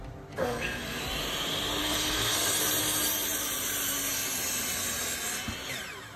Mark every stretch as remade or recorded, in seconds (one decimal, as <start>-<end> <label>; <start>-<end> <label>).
0.0-0.4 recorded; 0.4-1.0 remade; 1.0-1.8 recorded; 1.8-2.5 remade; 2.5-6.2 recorded